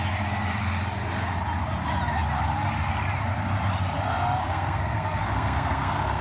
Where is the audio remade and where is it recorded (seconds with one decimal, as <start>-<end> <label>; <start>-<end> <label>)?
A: 0.0-4.4 recorded; 4.4-6.2 remade